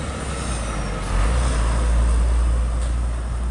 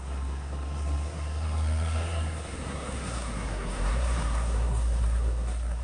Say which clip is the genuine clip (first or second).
first